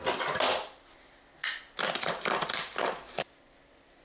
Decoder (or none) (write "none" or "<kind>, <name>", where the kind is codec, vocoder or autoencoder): none